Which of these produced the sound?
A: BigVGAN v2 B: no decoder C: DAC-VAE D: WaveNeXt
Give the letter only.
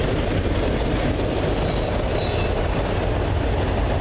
B